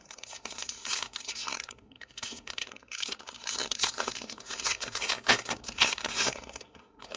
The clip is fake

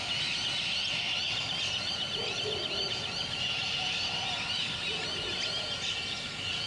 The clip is real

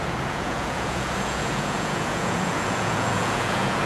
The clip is fake